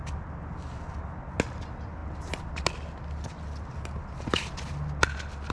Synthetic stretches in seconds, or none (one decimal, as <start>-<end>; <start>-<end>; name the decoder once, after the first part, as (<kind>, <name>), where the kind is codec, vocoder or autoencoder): none